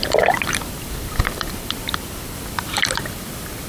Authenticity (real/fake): fake